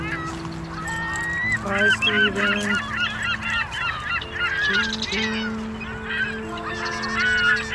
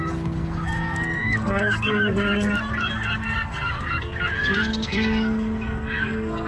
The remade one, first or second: second